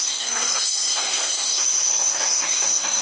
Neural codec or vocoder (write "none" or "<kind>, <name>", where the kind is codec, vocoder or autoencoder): codec, SNAC